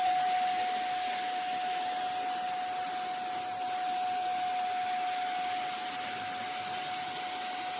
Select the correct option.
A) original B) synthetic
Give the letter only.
A